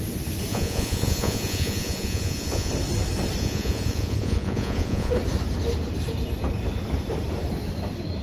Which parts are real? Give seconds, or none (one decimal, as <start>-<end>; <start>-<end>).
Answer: 0.0-0.5; 2.7-3.4; 5.1-8.2